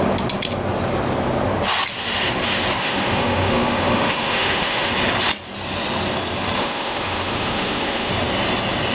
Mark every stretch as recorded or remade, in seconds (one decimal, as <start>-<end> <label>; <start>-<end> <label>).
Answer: 0.0-2.8 recorded; 2.8-4.9 remade; 4.9-6.6 recorded; 6.6-8.1 remade; 8.1-8.9 recorded